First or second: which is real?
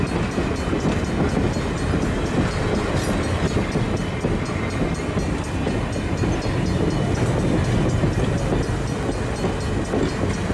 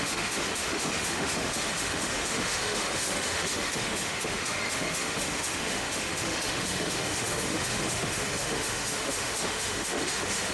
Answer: first